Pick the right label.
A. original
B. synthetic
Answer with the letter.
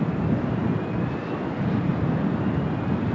A